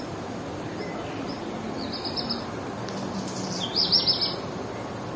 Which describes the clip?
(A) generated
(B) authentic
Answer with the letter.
B